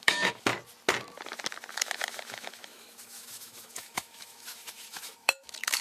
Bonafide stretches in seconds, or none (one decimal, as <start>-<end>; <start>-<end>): 0.5-1.7